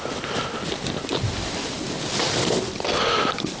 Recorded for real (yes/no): yes